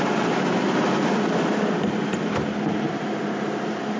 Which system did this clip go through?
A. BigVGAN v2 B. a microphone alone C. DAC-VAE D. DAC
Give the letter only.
B